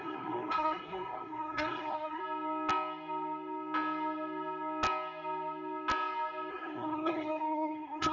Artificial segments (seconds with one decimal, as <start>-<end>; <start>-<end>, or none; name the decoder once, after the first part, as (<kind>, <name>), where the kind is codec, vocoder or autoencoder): 0.0-2.2 (codec, SNAC); 6.5-8.1